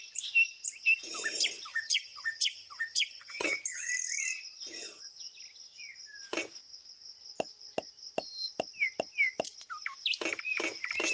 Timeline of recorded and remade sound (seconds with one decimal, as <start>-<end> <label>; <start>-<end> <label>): 0.0-1.7 recorded; 1.7-3.9 remade; 3.9-11.1 recorded